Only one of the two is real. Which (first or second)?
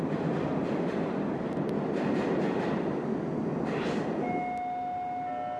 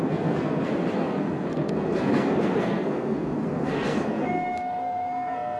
first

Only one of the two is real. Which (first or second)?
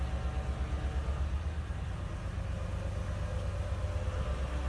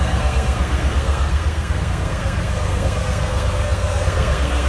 first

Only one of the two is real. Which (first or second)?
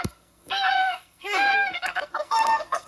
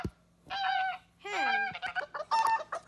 second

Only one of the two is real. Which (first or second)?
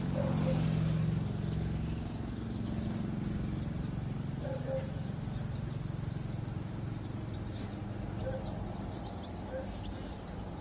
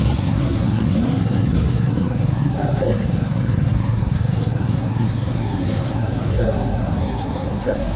first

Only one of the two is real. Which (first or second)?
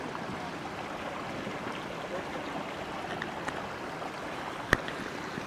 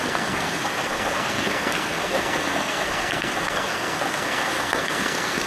first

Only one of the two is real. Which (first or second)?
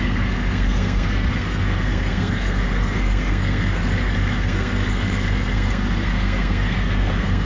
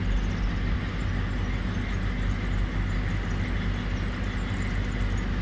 second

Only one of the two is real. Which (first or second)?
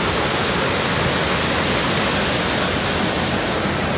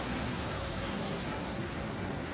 first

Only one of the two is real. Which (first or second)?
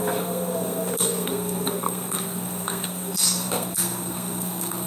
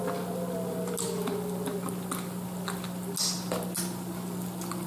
second